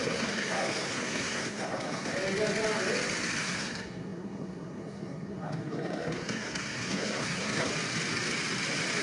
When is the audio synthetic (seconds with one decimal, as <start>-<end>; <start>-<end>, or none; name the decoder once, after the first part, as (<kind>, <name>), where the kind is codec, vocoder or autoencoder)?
0.0-2.1 (codec, SNAC); 3.4-7.7